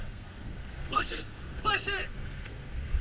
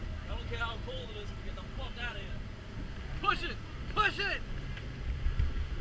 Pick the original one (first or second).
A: second